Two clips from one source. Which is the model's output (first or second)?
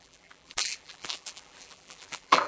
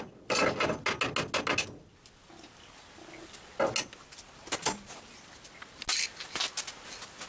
first